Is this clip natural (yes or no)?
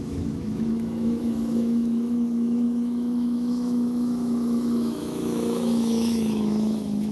no